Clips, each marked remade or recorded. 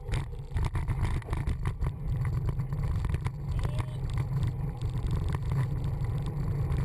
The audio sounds recorded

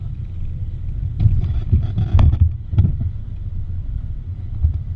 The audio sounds remade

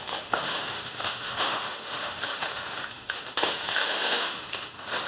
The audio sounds remade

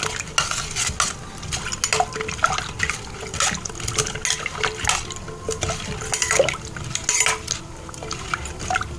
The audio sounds recorded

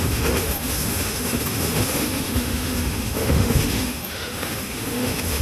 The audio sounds remade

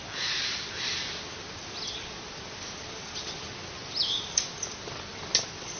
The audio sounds recorded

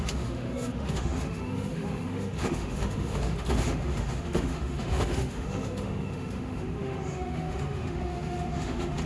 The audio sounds remade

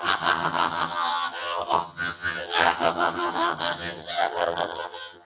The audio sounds remade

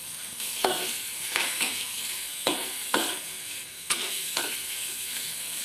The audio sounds remade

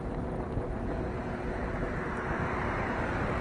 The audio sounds recorded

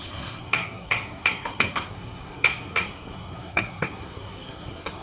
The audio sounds remade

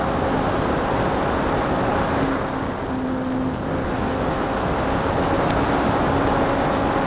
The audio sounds recorded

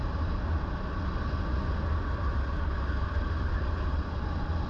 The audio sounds recorded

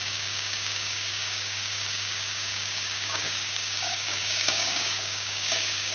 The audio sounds remade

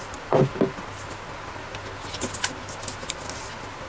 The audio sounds recorded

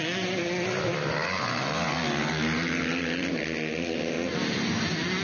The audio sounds recorded